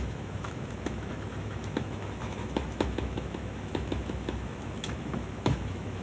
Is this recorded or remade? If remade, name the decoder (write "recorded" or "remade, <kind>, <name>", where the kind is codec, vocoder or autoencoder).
remade, autoencoder, DAC-VAE